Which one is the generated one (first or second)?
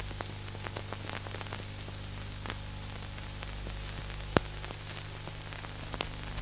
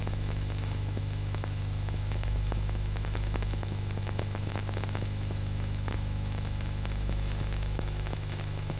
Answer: second